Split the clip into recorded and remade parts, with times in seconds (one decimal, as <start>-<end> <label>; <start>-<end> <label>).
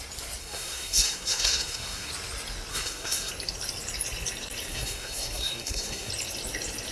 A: 0.0-0.4 recorded; 0.4-2.1 remade; 2.1-2.7 recorded; 2.7-3.3 remade; 3.3-4.7 recorded; 4.7-6.1 remade; 6.1-6.9 recorded